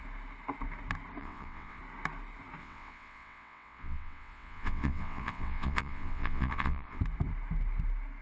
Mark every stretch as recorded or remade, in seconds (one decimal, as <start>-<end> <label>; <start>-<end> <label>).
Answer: 0.0-1.2 recorded; 1.2-1.8 remade; 1.8-2.6 recorded; 2.6-7.0 remade; 7.0-8.2 recorded